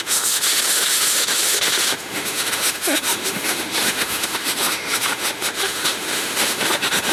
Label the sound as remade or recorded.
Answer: remade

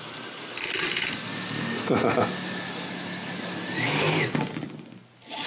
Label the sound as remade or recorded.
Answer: recorded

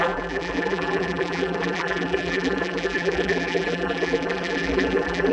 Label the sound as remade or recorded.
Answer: remade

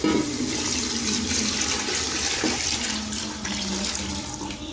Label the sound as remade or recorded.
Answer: recorded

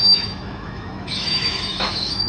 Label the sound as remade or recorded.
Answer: remade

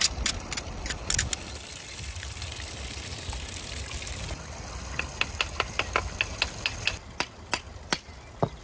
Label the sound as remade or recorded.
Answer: recorded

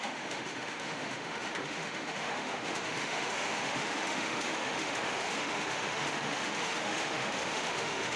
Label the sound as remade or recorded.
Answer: remade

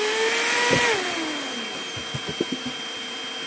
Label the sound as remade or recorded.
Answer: recorded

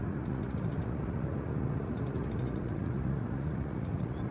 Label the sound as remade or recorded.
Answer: remade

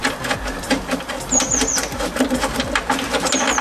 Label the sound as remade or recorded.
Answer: recorded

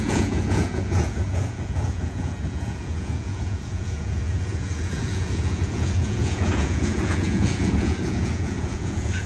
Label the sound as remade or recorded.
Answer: remade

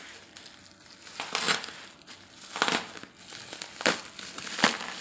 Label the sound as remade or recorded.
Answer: recorded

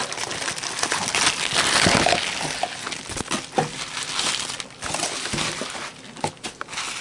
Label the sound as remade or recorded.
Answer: recorded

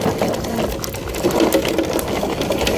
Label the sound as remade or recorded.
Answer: recorded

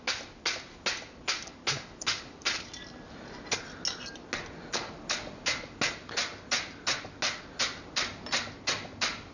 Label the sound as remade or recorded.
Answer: recorded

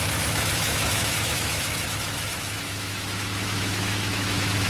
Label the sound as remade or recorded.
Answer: remade